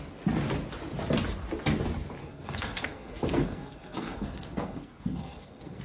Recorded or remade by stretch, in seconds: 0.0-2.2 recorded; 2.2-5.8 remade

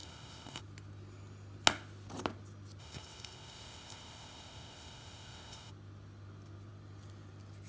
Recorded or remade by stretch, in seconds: 0.0-0.6 remade; 0.6-2.8 recorded; 2.8-5.7 remade; 5.7-7.7 recorded

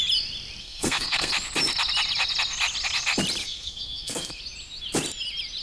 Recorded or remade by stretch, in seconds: 0.0-0.6 recorded; 0.6-1.3 remade; 1.3-3.4 recorded; 3.4-4.4 remade; 4.4-5.6 recorded